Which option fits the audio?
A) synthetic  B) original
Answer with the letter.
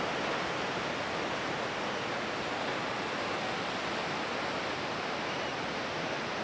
B